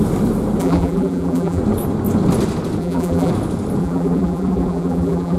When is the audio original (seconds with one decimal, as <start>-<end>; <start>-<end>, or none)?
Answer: 0.0-0.6; 1.6-2.8; 3.3-3.8